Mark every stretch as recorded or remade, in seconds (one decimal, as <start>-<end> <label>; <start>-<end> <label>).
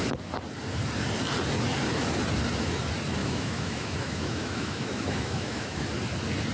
0.0-3.2 recorded; 3.2-5.8 remade; 5.8-6.5 recorded